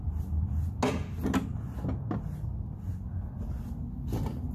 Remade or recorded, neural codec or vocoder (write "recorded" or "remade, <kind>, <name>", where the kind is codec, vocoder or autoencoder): recorded